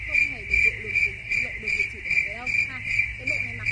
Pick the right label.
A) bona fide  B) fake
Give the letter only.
A